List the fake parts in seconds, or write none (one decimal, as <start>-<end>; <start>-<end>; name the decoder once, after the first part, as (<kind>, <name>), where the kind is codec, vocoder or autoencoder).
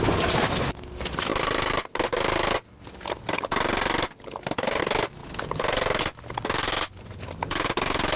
none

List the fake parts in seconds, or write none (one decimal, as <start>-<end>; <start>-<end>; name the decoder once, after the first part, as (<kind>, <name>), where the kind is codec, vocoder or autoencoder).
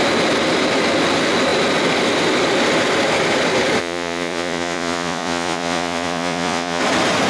3.8-6.8 (vocoder, Vocos)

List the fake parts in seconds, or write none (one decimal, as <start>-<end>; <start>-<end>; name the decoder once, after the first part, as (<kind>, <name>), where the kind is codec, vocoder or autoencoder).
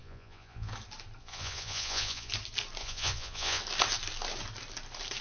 0.0-0.7 (vocoder, Vocos); 1.2-2.3; 2.8-3.6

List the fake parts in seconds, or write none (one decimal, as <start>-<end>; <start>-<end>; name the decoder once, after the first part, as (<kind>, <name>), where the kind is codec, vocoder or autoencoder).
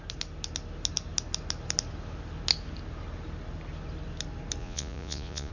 4.6-5.5 (vocoder, Vocos)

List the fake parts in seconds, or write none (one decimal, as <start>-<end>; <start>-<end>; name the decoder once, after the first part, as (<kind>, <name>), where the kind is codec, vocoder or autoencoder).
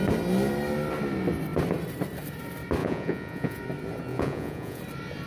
2.8-3.6 (vocoder, Vocos); 4.1-4.8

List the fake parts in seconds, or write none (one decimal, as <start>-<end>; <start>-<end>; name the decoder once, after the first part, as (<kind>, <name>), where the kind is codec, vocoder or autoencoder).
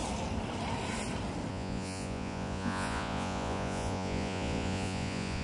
1.5-5.4 (vocoder, Vocos)